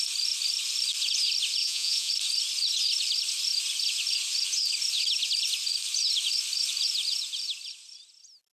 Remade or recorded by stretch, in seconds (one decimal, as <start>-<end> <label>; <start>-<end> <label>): 0.0-1.6 recorded; 1.6-2.1 remade; 2.1-8.6 recorded